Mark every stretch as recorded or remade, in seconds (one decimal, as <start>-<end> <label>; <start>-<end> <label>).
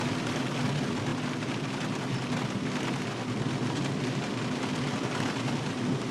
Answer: 0.0-6.1 recorded